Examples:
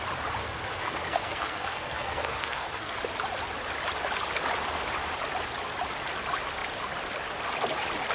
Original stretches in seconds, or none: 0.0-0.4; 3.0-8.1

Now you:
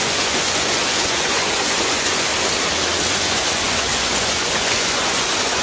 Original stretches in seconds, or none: 2.3-3.1

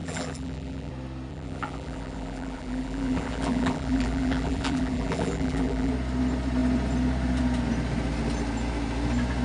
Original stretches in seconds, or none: 0.9-1.3; 5.9-9.4

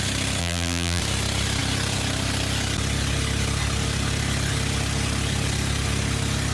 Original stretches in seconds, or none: 0.0-0.4; 1.0-6.5

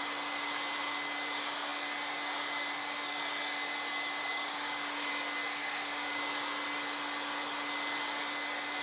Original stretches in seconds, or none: 0.0-4.2; 5.1-5.6; 6.2-8.8

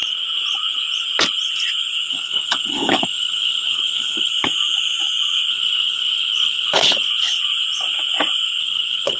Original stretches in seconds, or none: 0.0-2.1; 4.3-5.5; 7.1-8.6

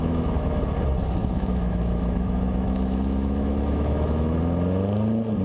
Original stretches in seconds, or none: 0.6-1.2; 4.4-5.4